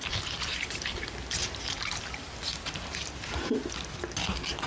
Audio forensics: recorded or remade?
recorded